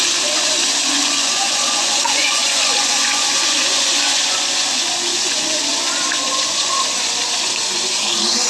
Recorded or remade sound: remade